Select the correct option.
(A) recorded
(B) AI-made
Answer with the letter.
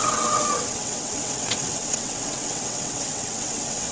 B